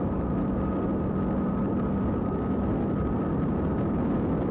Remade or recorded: recorded